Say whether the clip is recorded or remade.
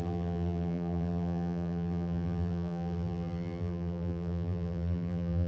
remade